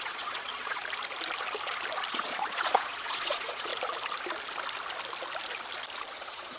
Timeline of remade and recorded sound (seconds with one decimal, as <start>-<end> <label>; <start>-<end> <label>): 0.0-0.8 remade; 0.8-2.1 recorded; 2.1-3.7 remade; 3.7-6.1 recorded; 6.1-6.6 remade